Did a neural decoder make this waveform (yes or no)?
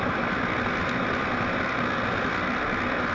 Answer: no